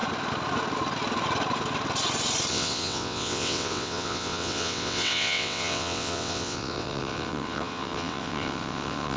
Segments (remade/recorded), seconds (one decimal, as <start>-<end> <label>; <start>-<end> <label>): 0.0-2.5 recorded; 2.5-9.2 remade